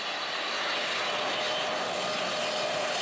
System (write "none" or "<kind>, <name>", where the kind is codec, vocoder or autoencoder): none